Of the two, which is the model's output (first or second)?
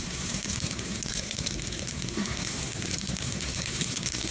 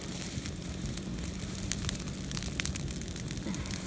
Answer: first